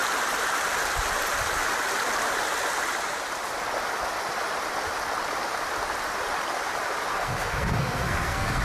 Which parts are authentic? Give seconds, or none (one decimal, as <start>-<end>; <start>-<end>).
0.0-7.1